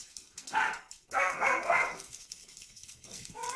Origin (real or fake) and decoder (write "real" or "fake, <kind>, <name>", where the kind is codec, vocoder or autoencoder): fake, codec, SNAC